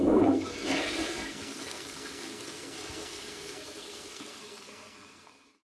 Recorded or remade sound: remade